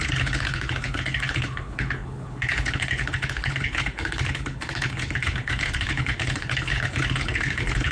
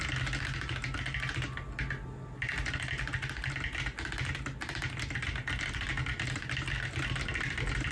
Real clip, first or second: second